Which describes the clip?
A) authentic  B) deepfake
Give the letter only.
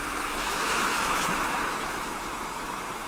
B